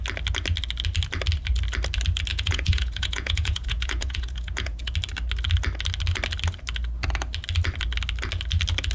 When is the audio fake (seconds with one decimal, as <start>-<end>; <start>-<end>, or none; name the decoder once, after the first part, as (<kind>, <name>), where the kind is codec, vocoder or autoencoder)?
2.3-4.9 (vocoder, Vocos)